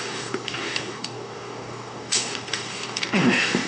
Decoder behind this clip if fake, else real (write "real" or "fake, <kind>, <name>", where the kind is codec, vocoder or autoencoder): fake, codec, DAC